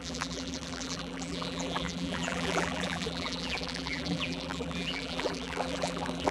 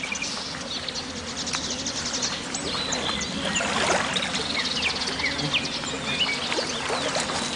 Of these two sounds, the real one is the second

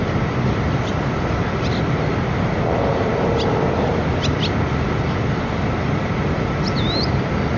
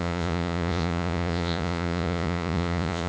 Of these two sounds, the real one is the first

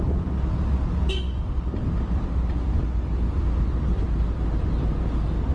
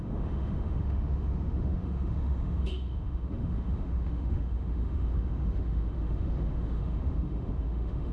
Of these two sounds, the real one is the first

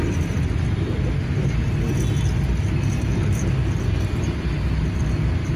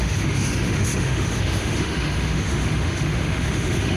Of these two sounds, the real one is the first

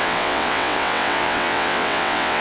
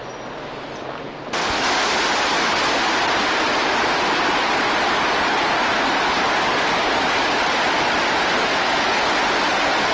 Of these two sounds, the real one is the second